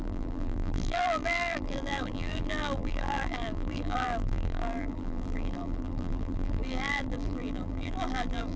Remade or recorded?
remade